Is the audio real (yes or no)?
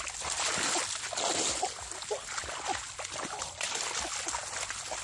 yes